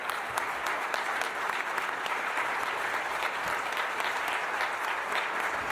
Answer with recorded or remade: recorded